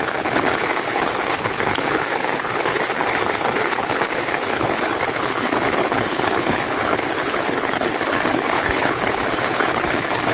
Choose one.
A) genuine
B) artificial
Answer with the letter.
B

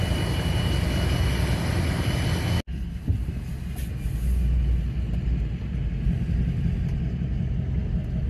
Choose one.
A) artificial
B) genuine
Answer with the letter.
B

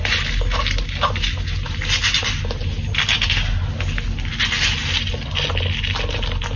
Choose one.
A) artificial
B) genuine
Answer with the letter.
B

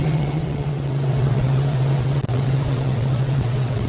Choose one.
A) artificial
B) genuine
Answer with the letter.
A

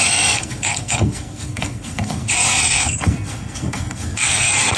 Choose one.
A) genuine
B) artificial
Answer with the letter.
B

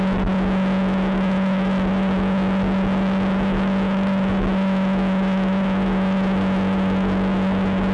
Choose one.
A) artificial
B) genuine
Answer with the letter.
A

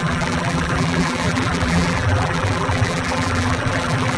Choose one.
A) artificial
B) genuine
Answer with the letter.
A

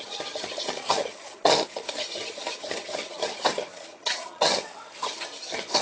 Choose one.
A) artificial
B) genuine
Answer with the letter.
A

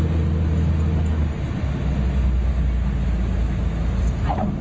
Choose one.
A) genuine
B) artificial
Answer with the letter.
A